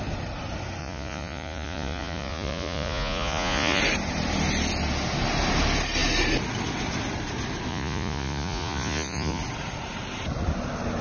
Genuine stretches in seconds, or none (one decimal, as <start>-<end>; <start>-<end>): 0.0-0.8; 3.8-7.7; 9.4-11.0